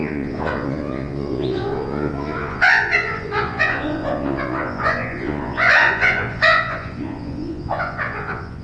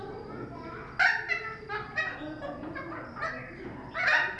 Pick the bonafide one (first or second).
second